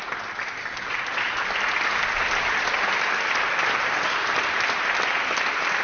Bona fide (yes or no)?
yes